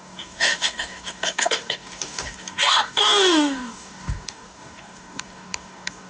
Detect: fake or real fake